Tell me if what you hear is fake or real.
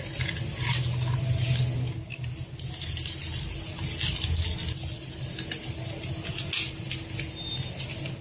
real